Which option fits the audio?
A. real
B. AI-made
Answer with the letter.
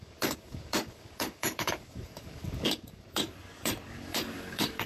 B